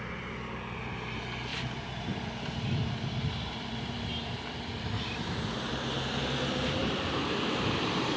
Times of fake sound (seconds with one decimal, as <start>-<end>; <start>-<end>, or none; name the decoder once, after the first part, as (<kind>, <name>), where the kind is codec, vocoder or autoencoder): 1.5-6.2 (vocoder, BigVGAN v2); 6.8-8.2